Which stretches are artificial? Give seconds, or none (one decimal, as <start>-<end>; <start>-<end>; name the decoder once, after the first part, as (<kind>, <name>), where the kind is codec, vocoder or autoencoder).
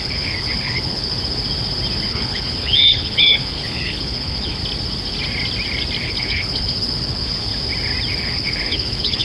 0.0-1.1 (codec, HILCodec); 2.0-4.6; 6.0-7.5; 8.1-9.2